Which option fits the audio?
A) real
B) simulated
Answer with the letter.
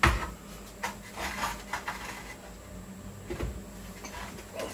A